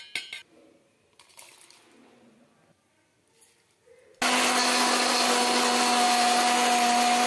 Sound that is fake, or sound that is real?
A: real